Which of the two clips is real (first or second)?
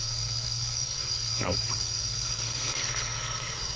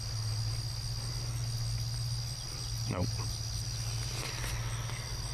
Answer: second